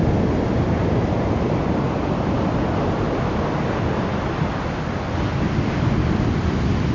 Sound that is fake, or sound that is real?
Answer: real